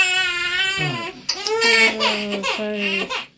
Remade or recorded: recorded